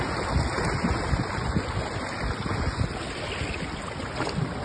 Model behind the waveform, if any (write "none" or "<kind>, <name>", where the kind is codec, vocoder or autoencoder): none